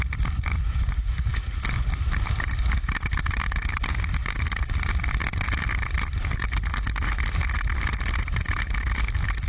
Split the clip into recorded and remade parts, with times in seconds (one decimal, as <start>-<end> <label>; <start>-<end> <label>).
0.0-9.5 recorded